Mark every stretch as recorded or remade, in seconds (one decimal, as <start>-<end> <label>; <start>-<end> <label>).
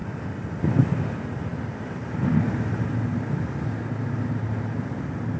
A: 0.0-5.4 recorded